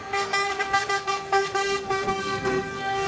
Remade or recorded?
remade